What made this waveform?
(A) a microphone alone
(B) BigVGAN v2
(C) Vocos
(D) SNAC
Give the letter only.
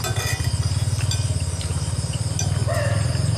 A